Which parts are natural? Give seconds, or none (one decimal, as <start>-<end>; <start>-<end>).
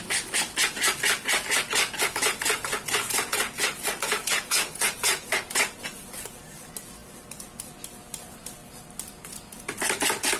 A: 0.0-2.2; 6.3-10.4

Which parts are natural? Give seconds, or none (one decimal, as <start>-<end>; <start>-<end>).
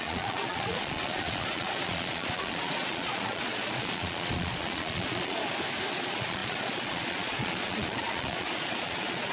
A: 5.4-5.9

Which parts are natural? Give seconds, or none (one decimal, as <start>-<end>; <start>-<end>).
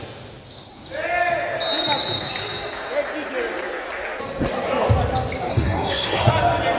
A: 0.0-5.5; 6.3-6.8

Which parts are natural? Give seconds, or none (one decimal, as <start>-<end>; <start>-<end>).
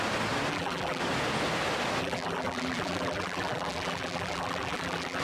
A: 0.0-0.5; 1.0-2.0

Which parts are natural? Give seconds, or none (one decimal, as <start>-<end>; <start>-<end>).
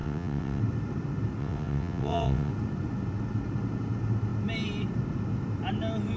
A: 0.6-1.4; 2.5-6.2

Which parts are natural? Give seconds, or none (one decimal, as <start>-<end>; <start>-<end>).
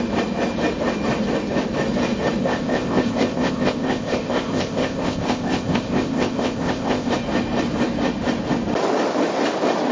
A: 0.0-2.4; 7.1-9.9